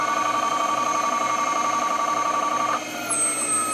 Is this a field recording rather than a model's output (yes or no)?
yes